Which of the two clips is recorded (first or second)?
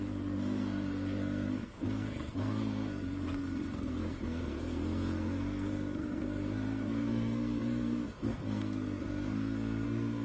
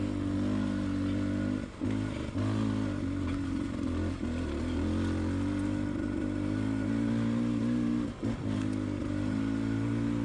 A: second